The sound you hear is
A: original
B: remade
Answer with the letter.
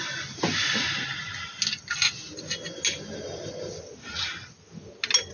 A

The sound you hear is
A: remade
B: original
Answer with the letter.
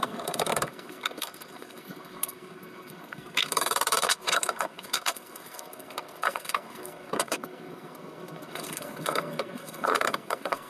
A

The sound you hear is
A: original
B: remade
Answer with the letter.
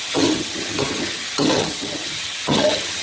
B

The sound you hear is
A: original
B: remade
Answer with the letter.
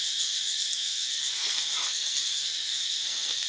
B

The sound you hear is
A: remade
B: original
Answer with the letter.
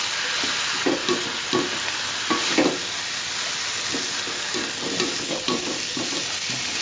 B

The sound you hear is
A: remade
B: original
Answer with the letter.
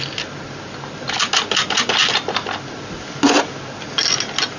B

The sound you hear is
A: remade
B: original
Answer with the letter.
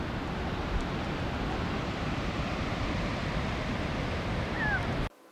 B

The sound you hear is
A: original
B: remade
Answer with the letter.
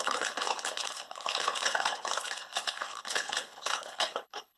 B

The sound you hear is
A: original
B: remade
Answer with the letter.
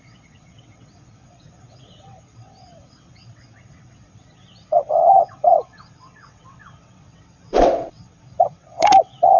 B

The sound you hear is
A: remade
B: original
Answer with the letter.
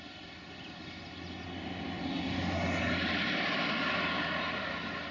B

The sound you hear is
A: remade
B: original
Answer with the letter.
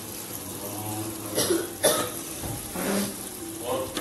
B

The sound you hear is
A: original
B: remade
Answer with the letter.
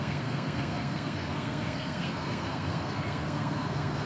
B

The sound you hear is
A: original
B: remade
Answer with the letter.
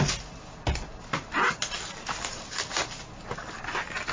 A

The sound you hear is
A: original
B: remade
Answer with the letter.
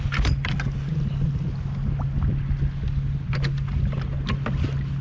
A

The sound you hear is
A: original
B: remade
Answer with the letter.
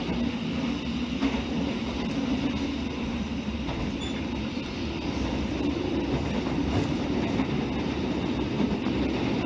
A